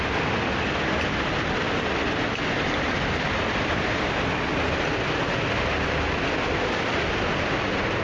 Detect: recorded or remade recorded